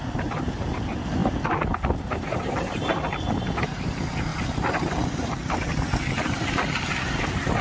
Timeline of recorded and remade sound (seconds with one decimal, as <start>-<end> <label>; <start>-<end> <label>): 0.0-1.2 recorded; 1.2-2.9 remade; 2.9-4.3 recorded; 4.3-6.9 remade; 6.9-7.6 recorded